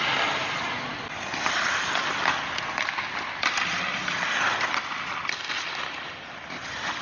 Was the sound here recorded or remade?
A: recorded